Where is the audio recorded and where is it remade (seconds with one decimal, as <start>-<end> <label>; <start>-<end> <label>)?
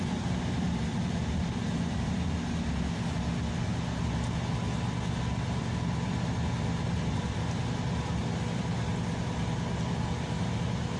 0.0-11.0 recorded